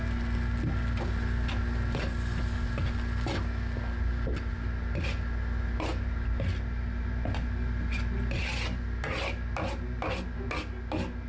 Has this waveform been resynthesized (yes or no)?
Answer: no